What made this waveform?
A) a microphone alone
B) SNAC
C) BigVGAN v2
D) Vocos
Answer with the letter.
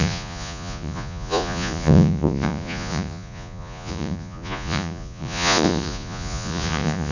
D